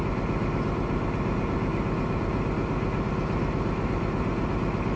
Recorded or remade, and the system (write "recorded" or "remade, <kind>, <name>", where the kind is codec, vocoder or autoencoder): recorded